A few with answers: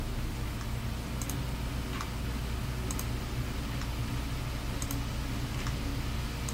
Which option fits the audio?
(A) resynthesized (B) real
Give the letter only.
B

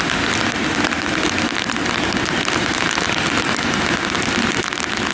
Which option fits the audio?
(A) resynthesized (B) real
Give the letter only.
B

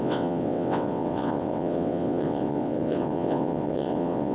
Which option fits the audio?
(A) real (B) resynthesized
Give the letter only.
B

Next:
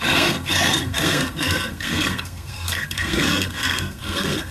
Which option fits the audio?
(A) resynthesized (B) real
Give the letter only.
A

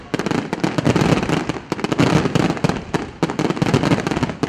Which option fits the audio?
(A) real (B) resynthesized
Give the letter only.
A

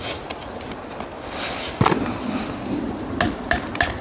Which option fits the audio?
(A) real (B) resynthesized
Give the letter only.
A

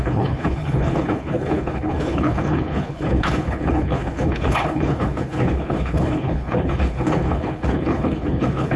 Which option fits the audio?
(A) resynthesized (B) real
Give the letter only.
A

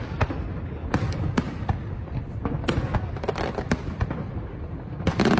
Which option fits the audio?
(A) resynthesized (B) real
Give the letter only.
B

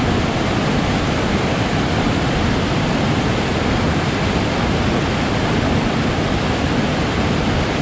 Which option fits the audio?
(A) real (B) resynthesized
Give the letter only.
A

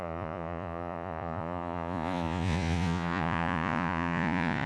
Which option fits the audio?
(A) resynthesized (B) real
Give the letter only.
A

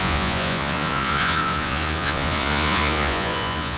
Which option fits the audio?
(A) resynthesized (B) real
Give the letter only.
A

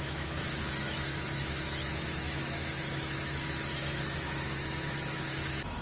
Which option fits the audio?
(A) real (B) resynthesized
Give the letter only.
B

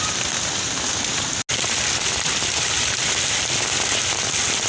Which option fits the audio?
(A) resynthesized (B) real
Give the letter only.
B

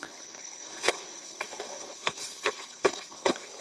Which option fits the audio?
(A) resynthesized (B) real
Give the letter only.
A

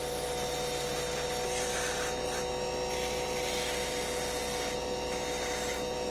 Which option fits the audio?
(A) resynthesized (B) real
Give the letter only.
B